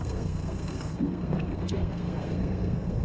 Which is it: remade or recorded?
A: remade